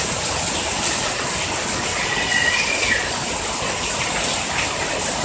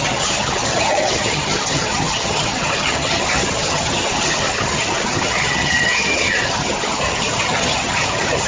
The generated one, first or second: second